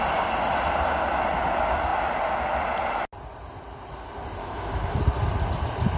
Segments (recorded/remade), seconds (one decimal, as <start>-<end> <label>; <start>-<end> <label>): 0.0-4.4 recorded; 4.4-5.0 remade; 5.0-6.0 recorded